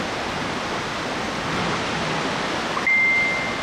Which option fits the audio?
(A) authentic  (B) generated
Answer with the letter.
A